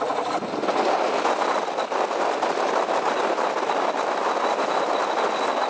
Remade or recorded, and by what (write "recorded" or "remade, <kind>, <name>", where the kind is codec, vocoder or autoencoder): recorded